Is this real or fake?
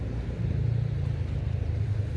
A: real